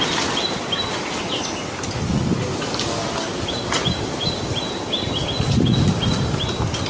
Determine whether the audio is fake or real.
real